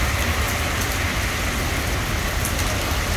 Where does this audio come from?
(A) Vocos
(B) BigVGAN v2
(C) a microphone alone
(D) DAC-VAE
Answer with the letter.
C